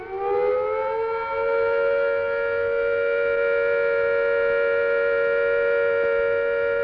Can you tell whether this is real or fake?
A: real